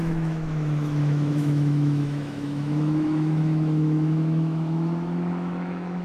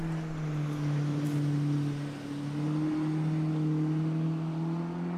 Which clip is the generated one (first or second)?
first